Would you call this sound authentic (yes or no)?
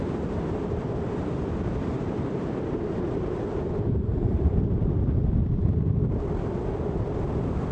no